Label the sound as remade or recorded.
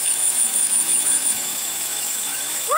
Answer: remade